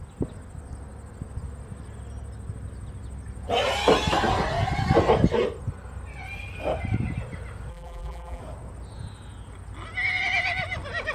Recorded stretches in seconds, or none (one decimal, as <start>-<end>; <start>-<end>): 0.0-7.7; 8.4-11.1